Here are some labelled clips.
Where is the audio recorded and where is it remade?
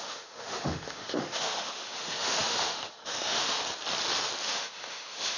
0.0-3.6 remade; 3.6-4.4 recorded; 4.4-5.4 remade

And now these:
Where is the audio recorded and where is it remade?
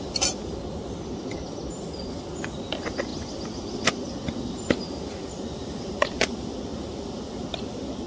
0.0-8.1 recorded